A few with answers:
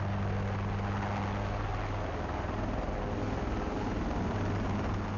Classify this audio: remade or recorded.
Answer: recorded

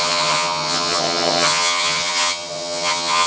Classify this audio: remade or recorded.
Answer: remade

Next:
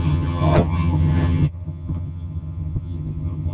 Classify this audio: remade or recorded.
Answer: remade